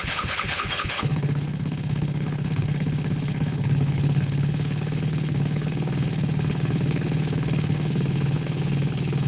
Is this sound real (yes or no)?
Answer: no